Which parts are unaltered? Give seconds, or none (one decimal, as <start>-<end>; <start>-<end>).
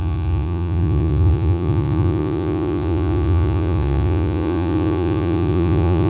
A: none